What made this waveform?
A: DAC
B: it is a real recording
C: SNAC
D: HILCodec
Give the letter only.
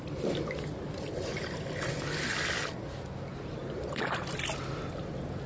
B